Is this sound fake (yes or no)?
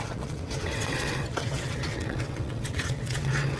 yes